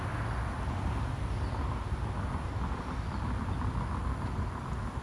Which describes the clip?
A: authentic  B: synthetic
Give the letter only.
A